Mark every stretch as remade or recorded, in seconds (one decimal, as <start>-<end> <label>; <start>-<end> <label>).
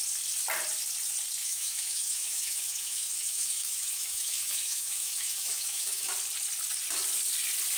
0.0-1.4 recorded; 1.4-6.1 remade; 6.1-7.8 recorded